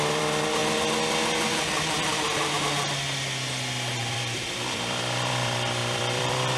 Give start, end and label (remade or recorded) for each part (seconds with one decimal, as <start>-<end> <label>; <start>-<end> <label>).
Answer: 0.0-0.6 remade; 0.6-4.1 recorded; 4.1-6.6 remade